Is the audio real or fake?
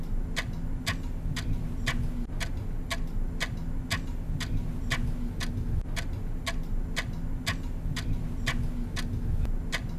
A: real